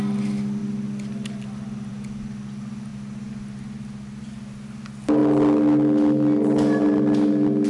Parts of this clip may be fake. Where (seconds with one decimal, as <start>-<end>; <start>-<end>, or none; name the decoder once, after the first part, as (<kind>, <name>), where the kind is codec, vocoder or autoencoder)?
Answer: none

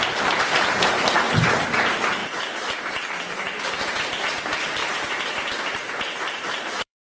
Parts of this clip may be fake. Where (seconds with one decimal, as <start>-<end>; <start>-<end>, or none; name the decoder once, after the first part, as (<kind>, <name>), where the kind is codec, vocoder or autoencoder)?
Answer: 4.8-7.1 (vocoder, BigVGAN v2)

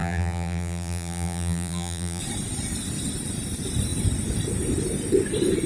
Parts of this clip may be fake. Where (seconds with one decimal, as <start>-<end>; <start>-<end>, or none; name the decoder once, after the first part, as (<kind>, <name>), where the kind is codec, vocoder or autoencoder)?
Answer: 0.0-2.2 (vocoder, BigVGAN v2)

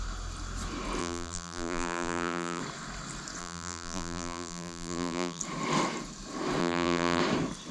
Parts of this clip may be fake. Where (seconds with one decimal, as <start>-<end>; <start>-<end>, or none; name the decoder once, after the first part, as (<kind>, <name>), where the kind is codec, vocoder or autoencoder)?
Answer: 1.0-2.6 (vocoder, BigVGAN v2); 3.4-5.4; 6.6-7.2